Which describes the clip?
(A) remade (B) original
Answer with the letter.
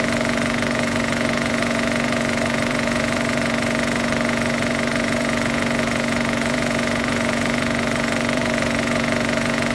A